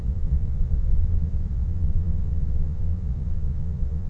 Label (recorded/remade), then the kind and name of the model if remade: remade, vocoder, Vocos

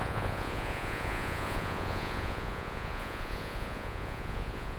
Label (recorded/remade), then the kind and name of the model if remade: remade, vocoder, Vocos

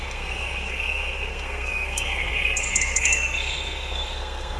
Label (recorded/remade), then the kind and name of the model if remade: remade, codec, SNAC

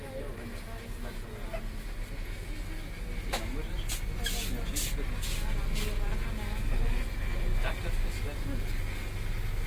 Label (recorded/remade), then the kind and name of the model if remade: recorded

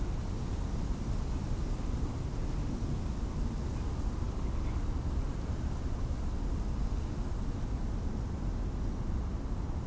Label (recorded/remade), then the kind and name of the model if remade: recorded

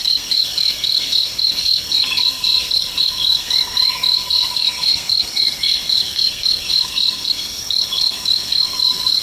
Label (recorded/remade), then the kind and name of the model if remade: remade, codec, SNAC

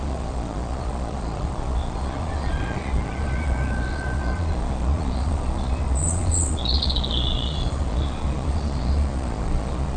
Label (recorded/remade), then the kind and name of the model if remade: remade, vocoder, Vocos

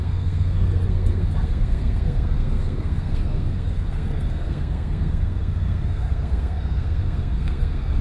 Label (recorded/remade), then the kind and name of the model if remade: remade, codec, SNAC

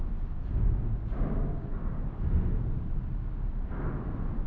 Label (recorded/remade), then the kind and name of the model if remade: recorded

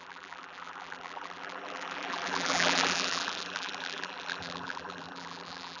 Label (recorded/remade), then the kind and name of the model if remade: remade, vocoder, BigVGAN v2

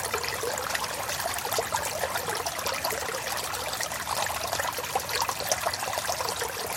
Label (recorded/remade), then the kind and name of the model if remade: recorded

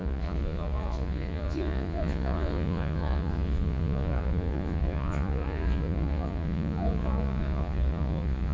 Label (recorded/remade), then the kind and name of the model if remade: remade, vocoder, Vocos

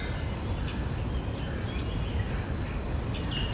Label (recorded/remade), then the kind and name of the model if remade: recorded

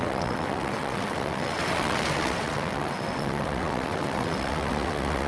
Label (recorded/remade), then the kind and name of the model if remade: remade, vocoder, WaveNeXt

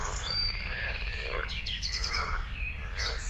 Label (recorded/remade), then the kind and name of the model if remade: remade, codec, DAC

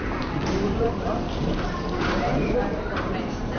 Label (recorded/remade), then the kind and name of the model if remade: remade, vocoder, BigVGAN v2